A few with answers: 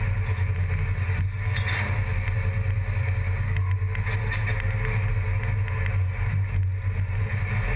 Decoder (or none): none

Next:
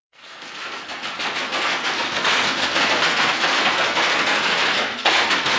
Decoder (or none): codec, SNAC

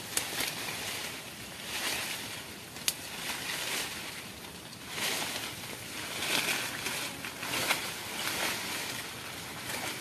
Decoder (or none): none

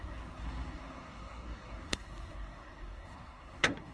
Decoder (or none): codec, SNAC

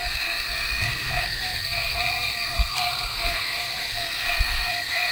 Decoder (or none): codec, SNAC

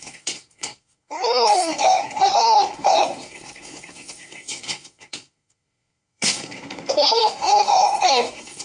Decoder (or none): codec, SNAC